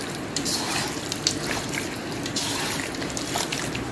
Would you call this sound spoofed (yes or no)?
yes